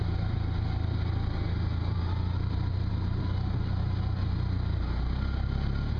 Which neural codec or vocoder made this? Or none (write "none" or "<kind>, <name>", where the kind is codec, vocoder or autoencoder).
none